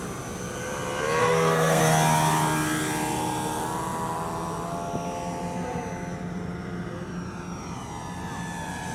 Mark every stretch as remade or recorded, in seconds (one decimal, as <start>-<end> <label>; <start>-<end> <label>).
0.0-1.2 recorded; 1.2-1.8 remade; 1.8-8.9 recorded